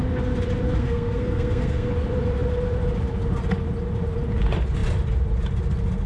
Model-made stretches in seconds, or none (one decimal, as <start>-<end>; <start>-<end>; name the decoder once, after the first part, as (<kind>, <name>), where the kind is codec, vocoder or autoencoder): 0.8-1.9 (codec, SNAC)